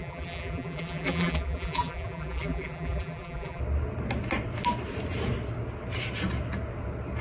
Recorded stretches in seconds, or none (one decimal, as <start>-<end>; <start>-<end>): 3.6-7.2

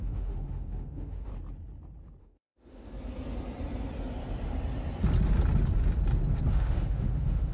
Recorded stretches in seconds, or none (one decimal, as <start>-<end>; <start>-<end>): 1.3-2.2; 2.9-6.5

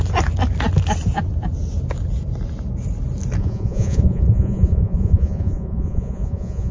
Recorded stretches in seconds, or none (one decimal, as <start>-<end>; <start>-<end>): 0.0-3.4